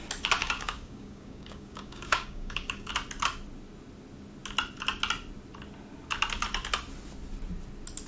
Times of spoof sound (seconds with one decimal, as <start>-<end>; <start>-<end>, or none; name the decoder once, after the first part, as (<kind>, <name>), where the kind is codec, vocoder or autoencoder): 0.4-2.9 (codec, DAC)